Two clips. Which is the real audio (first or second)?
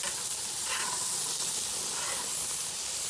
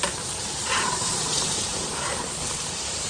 first